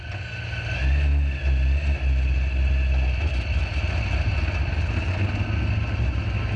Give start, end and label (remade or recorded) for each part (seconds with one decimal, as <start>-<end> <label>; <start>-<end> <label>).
0.0-6.6 recorded